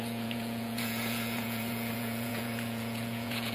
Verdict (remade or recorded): remade